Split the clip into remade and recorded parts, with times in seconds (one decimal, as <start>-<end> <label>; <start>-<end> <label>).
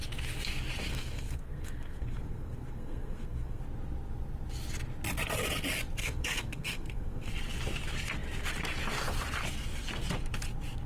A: 0.0-0.9 recorded; 0.9-3.6 remade; 3.6-6.0 recorded; 6.0-7.3 remade; 7.3-10.9 recorded